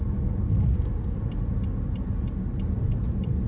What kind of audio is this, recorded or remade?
recorded